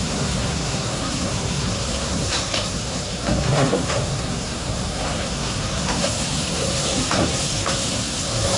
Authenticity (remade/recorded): remade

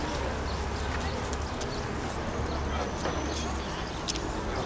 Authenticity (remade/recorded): recorded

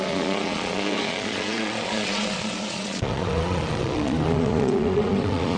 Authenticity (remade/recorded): remade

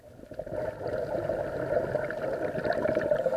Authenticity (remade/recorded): recorded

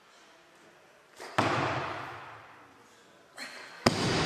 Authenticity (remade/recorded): recorded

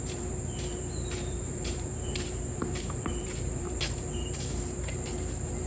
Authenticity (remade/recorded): remade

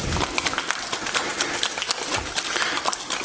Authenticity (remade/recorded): recorded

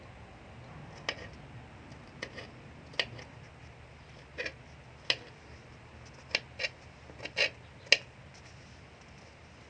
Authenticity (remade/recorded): recorded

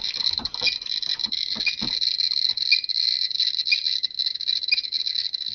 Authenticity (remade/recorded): recorded